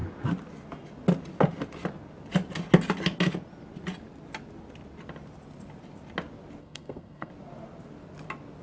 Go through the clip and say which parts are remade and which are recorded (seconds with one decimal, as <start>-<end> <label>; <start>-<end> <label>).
0.0-6.6 recorded; 6.6-7.3 remade; 7.3-8.6 recorded